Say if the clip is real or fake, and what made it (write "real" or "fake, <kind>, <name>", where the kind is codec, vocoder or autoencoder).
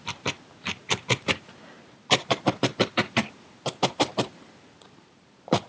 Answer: fake, vocoder, BigVGAN v2